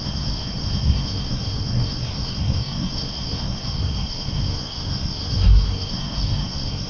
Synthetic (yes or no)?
yes